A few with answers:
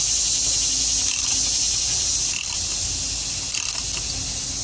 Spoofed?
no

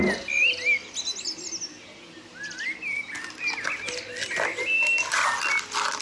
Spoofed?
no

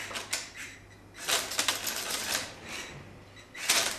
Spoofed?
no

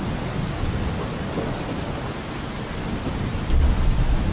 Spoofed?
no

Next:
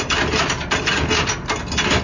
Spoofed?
no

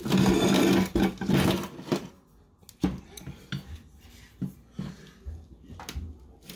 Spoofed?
no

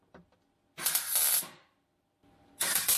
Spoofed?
no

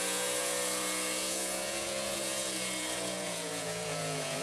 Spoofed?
yes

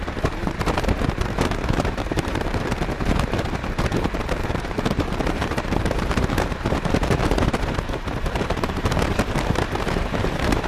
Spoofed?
yes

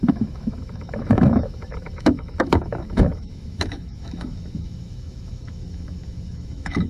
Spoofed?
yes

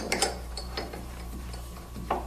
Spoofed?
yes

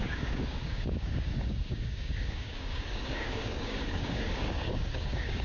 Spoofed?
yes